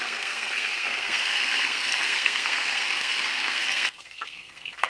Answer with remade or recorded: remade